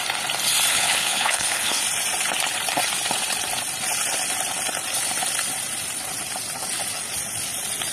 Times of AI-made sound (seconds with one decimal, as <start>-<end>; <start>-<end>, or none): 0.7-1.8

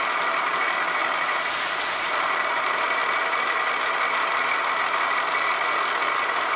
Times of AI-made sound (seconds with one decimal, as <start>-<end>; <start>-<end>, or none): none

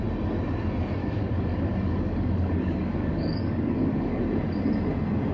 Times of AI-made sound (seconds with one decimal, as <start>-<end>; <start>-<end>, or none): 1.0-4.2

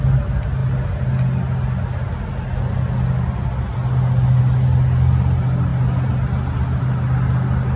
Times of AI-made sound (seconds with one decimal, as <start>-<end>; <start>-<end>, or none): none